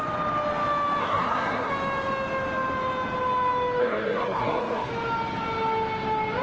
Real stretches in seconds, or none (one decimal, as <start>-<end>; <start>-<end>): 0.0-1.0; 1.7-3.8; 4.9-6.4